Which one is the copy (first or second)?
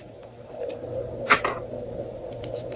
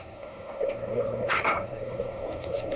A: second